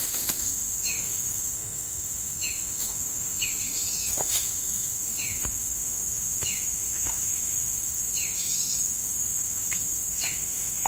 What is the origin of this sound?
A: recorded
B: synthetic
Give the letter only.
B